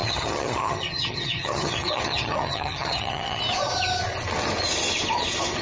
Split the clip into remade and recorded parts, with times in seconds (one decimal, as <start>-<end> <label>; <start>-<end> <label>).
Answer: 0.0-3.4 remade; 3.4-5.6 recorded